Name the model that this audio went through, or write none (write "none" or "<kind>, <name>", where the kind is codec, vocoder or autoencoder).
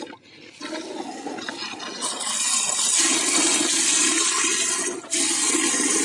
none